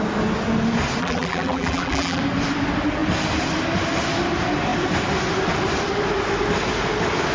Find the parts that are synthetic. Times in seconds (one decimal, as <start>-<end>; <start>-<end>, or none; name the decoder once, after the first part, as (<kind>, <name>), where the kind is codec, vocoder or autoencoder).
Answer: 1.0-2.2 (vocoder, BigVGAN v2)